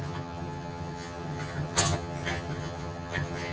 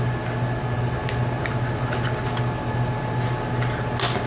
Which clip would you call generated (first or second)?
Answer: first